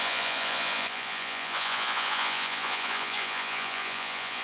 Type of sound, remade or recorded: remade